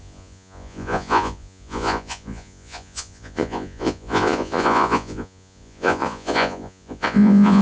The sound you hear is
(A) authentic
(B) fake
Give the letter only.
B